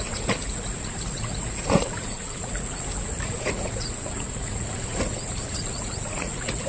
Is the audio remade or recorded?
remade